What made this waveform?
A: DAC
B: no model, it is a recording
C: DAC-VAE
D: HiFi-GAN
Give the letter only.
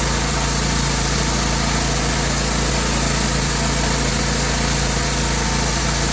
B